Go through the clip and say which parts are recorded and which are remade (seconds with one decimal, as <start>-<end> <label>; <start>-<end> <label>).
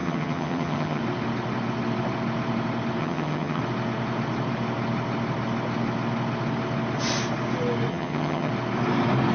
0.0-1.0 remade; 1.0-3.0 recorded; 3.0-3.6 remade; 3.6-7.9 recorded; 7.9-8.5 remade; 8.5-9.3 recorded